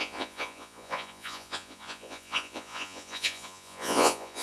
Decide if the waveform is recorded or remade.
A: remade